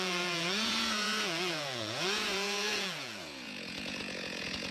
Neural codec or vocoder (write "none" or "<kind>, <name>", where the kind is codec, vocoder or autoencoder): vocoder, Vocos